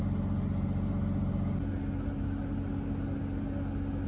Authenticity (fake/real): real